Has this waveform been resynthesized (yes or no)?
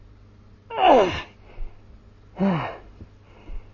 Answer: no